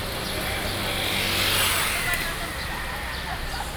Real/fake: real